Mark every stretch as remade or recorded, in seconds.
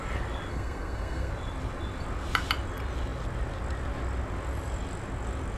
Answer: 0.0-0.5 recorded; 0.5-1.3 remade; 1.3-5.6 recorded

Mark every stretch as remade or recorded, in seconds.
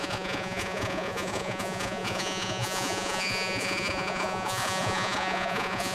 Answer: 0.0-5.9 remade